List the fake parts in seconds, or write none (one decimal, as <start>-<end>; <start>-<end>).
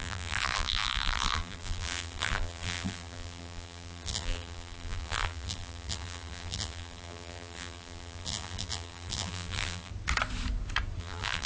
0.0-9.9; 11.0-11.5